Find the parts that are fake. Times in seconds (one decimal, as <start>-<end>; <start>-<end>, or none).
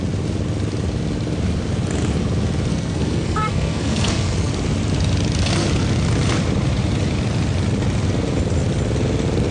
2.7-4.5